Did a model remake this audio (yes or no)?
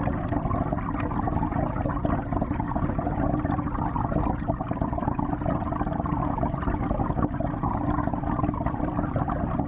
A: no